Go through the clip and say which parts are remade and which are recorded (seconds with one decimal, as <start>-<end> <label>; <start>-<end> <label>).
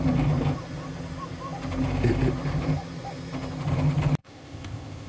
0.0-4.2 recorded; 4.2-5.1 remade